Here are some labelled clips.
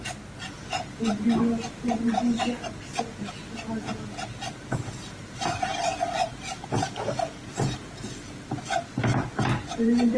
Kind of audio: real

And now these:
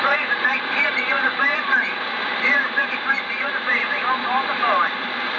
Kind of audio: fake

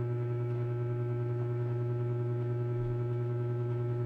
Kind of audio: fake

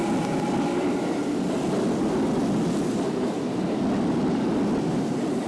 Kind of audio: real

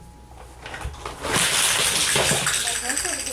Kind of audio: real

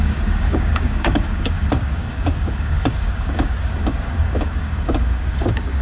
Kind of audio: fake